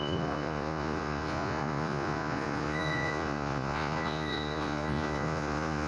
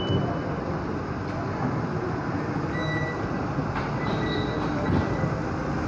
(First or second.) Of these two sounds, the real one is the second